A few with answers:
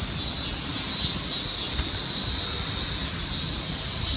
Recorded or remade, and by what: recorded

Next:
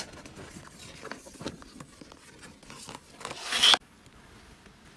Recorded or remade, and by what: recorded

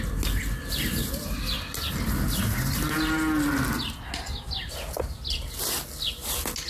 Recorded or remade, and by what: recorded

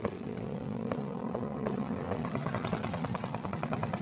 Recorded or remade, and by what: remade, vocoder, WaveNeXt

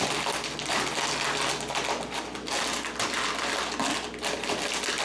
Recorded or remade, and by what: recorded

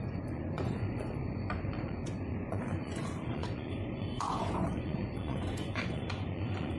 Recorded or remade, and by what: remade, vocoder, Vocos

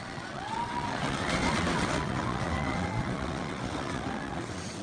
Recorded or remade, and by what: remade, vocoder, WaveNeXt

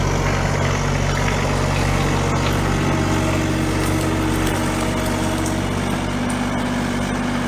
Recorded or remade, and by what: recorded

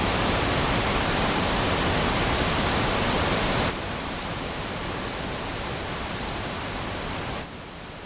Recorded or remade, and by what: recorded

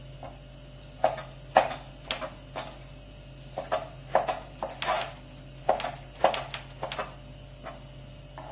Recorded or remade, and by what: recorded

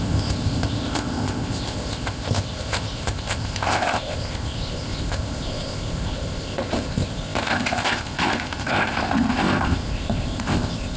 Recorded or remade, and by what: remade, codec, ZipCodec